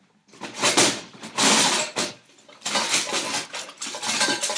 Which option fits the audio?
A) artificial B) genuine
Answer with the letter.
A